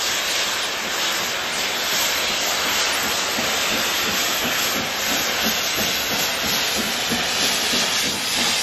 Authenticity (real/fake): real